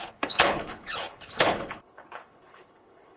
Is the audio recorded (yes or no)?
no